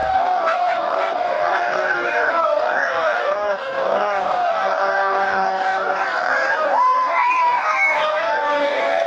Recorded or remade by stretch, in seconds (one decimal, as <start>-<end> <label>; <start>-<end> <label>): 0.0-9.1 remade